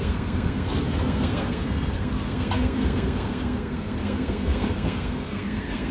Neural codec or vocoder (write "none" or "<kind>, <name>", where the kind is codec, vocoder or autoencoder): codec, SNAC